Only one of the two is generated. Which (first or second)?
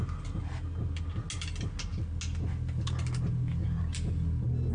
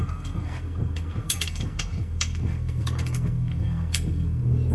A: second